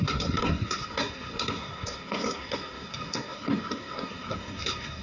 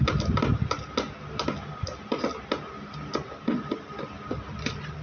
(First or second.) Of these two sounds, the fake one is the first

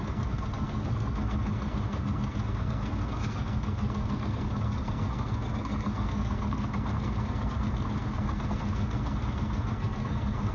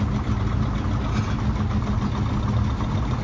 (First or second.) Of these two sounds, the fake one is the first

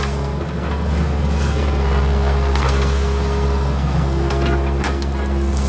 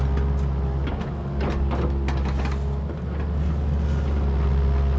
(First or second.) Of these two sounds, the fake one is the first